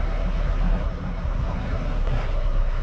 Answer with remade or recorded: remade